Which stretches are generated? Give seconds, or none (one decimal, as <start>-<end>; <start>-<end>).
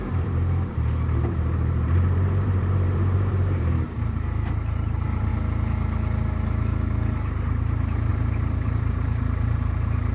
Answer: 0.0-5.3; 8.1-10.1